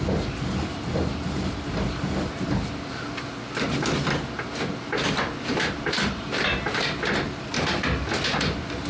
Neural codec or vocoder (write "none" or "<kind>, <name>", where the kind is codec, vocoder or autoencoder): none